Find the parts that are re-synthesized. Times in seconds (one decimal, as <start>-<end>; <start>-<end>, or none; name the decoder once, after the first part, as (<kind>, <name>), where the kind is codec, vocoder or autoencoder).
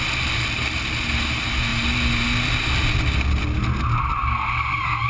none